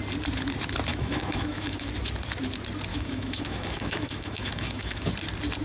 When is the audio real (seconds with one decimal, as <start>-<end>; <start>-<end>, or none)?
0.0-0.9; 1.9-2.9; 5.1-5.6